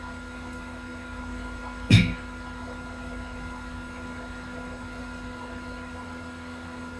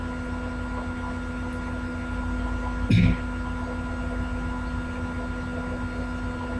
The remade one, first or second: first